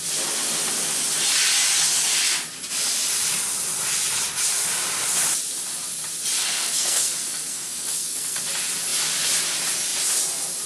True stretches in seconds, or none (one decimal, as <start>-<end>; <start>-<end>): 0.0-6.4; 8.4-10.7